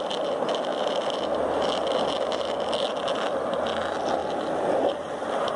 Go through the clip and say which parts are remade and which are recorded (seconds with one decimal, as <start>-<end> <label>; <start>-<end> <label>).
0.0-5.6 recorded